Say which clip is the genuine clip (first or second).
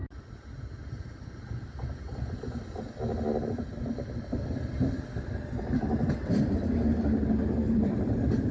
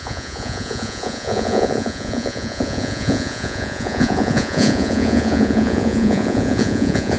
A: first